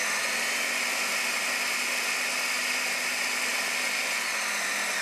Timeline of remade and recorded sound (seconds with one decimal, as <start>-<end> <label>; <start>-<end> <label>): 0.0-5.0 recorded